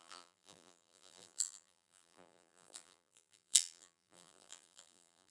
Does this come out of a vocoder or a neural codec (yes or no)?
yes